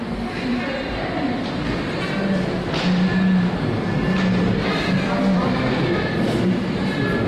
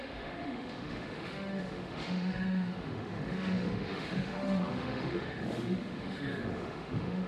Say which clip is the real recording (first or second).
first